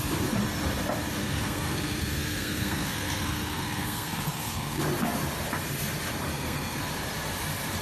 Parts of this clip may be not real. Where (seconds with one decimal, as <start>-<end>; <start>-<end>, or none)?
1.2-4.8; 6.3-6.8